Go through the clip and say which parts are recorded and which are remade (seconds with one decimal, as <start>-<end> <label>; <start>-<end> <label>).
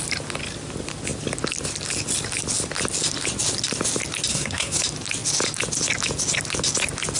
0.0-4.3 recorded; 4.3-4.8 remade; 4.8-7.2 recorded